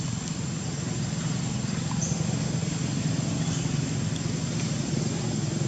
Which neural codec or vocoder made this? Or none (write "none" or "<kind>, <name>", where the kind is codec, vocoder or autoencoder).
none